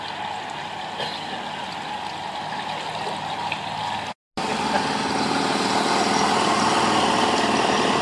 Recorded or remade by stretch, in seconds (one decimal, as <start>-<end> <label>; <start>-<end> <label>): 0.0-8.0 recorded